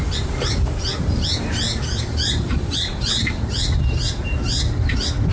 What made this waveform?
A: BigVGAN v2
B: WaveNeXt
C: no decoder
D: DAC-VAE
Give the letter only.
A